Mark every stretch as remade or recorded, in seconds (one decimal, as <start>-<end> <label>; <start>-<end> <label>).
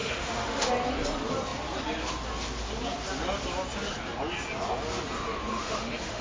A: 0.0-0.7 remade; 0.7-5.5 recorded; 5.5-6.2 remade